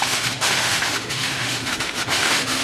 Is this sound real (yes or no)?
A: no